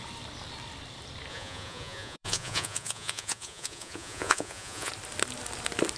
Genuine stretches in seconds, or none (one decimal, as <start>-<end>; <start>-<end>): 0.0-1.3; 4.9-6.0